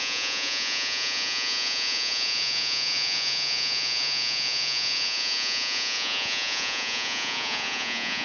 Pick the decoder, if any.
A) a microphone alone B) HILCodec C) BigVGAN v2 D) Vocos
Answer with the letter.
D